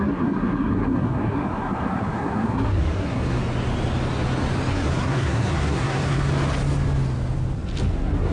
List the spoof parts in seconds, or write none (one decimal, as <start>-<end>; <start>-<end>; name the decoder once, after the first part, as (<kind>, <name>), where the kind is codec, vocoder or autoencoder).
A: 0.0-3.4 (codec, SNAC); 4.7-6.3; 7.9-8.3